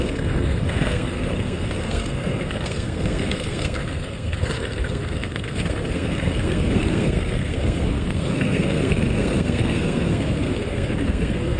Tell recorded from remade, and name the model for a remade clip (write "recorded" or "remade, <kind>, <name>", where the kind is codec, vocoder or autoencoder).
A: remade, codec, SNAC